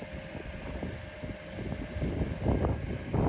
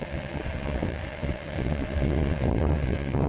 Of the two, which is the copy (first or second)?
second